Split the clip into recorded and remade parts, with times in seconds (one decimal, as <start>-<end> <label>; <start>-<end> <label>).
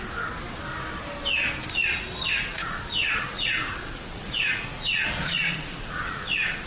0.0-2.5 recorded; 2.5-6.7 remade